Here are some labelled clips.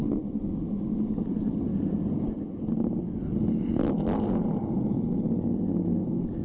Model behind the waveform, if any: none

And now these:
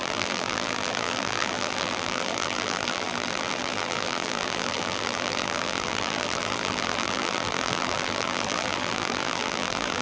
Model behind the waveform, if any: vocoder, BigVGAN v2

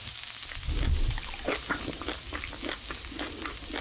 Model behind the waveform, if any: none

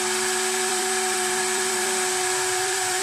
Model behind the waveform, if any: vocoder, BigVGAN v2